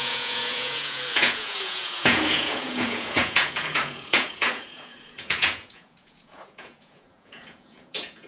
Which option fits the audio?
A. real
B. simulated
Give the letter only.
B